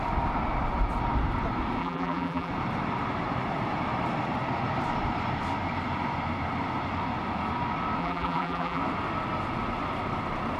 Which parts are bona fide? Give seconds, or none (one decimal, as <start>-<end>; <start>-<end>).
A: 0.0-1.8; 2.5-8.0; 8.8-10.6